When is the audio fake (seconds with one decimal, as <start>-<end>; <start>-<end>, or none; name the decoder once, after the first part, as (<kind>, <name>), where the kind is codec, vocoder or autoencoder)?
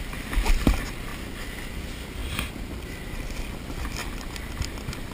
none